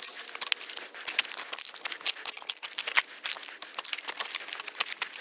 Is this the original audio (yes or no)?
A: yes